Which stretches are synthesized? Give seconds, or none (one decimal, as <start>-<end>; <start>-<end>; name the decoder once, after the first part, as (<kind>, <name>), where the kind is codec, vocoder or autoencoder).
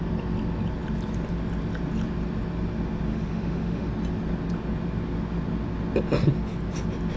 3.1-3.9 (autoencoder, DAC-VAE)